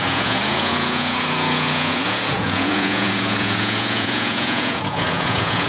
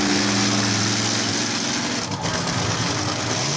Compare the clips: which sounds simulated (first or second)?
first